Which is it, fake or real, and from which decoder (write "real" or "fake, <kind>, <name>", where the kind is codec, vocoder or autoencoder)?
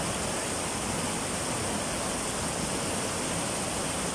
real